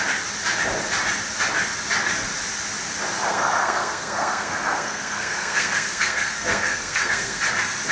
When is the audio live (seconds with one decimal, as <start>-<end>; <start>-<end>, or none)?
0.0-3.3; 7.4-7.9